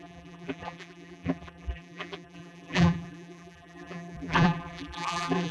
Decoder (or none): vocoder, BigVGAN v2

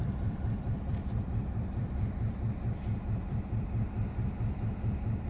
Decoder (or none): vocoder, BigVGAN v2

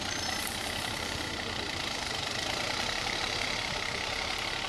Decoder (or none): vocoder, BigVGAN v2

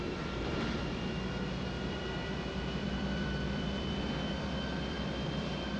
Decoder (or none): vocoder, BigVGAN v2